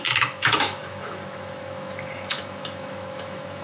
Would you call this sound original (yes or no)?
no